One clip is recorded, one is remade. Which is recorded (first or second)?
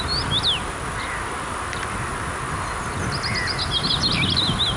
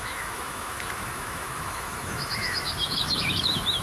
first